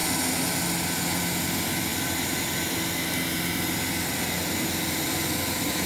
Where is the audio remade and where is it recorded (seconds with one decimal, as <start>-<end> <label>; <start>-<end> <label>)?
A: 0.0-5.9 recorded